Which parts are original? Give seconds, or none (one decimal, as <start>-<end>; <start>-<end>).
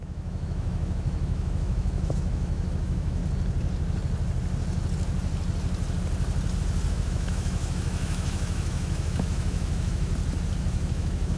3.2-6.9; 10.1-10.6